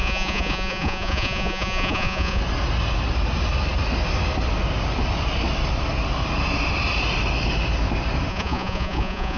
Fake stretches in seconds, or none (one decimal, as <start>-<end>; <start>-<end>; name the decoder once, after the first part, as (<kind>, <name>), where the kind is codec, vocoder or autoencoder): 0.0-2.4 (vocoder, Vocos); 8.3-9.4